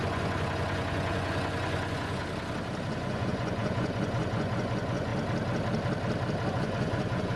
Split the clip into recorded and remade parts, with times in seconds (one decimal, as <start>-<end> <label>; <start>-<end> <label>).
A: 0.0-2.2 remade; 2.2-2.9 recorded; 2.9-5.1 remade; 5.1-6.5 recorded; 6.5-7.4 remade